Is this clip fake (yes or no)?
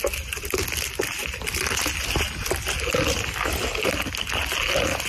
no